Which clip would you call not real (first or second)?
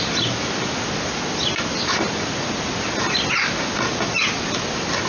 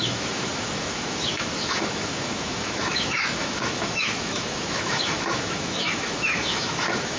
second